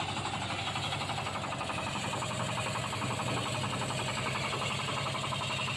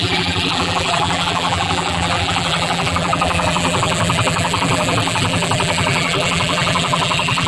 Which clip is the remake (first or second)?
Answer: second